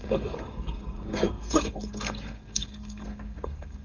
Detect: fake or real fake